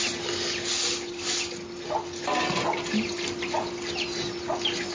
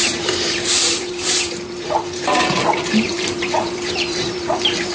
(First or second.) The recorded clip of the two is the first